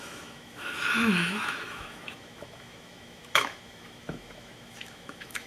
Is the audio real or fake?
fake